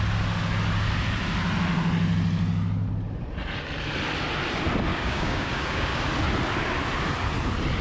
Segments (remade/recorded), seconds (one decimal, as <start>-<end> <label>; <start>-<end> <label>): 0.0-4.9 recorded; 4.9-6.0 remade; 6.0-7.8 recorded